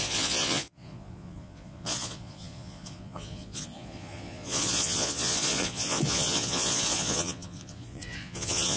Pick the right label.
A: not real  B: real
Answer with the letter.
A